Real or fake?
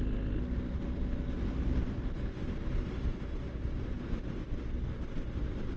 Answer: real